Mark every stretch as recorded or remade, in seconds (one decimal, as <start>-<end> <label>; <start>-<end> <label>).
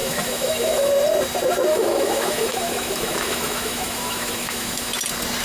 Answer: 0.0-0.9 remade; 0.9-1.7 recorded; 1.7-4.9 remade; 4.9-5.4 recorded